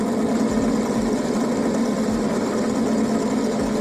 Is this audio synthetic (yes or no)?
no